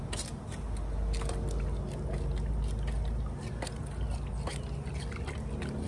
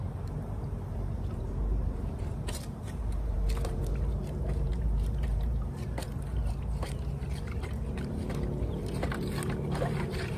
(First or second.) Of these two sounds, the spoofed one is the second